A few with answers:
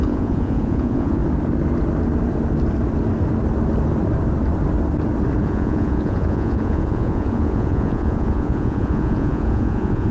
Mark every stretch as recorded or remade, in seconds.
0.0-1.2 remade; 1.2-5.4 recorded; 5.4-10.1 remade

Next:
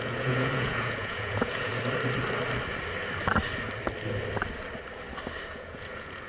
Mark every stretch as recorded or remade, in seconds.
0.0-1.7 remade; 1.7-5.5 recorded; 5.5-6.3 remade